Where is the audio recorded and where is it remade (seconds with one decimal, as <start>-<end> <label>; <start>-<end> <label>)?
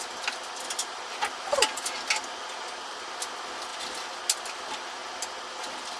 0.0-6.0 recorded